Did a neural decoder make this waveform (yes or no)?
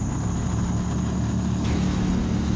no